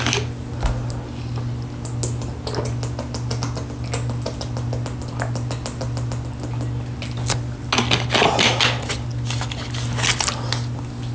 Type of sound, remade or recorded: recorded